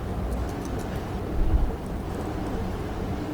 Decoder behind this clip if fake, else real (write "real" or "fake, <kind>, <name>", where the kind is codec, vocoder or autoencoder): real